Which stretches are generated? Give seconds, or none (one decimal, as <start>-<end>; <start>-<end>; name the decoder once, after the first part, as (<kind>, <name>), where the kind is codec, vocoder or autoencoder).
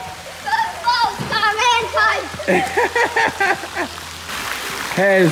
none